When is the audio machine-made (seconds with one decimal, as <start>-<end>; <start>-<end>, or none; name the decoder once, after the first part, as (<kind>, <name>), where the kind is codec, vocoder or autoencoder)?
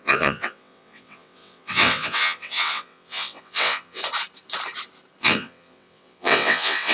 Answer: 0.0-4.0 (vocoder, WaveNeXt); 5.2-6.9